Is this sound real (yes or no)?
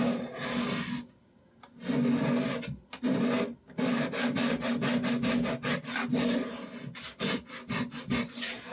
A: yes